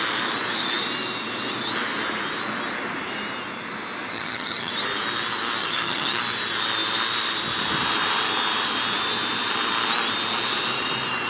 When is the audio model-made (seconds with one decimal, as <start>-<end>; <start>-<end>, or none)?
4.1-4.7; 5.6-6.2